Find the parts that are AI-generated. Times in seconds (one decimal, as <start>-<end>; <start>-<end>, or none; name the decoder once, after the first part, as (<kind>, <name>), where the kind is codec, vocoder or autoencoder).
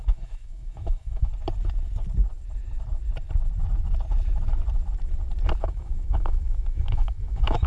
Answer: 0.0-1.3 (autoencoder, DAC-VAE); 5.6-7.7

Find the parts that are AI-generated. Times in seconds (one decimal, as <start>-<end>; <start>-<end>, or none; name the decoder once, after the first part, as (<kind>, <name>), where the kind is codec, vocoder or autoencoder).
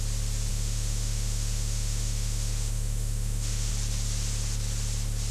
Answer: 0.5-3.7 (autoencoder, DAC-VAE)